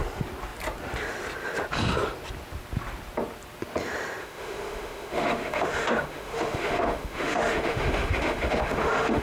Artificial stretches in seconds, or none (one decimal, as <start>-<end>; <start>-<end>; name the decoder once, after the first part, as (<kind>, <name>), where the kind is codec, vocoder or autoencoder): 4.2-9.2 (autoencoder, DAC-VAE)